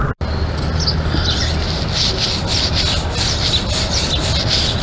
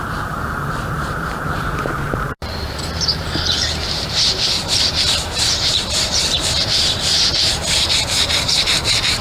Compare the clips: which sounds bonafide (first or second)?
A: first